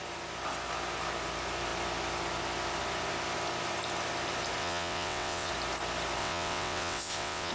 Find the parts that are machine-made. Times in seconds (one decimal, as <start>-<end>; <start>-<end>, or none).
4.6-5.5; 6.2-7.5

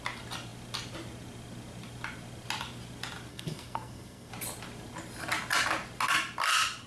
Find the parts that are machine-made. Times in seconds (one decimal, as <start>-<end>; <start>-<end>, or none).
3.3-4.3